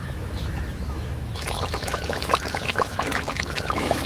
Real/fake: fake